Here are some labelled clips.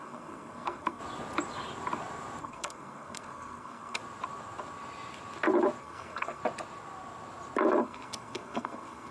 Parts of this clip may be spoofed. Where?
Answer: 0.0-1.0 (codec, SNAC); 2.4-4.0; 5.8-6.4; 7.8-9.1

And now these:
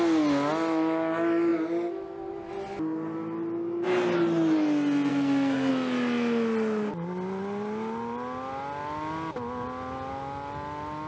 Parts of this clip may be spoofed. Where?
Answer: 5.1-5.7 (codec, SNAC)

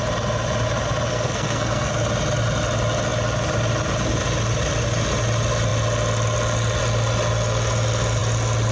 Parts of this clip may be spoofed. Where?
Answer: 1.1-1.9 (codec, SNAC)

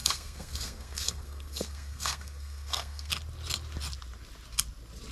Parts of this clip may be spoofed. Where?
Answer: 0.0-3.1 (codec, SNAC)

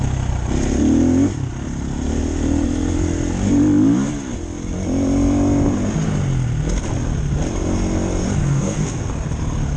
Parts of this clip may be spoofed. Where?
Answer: 8.4-9.1 (codec, SNAC)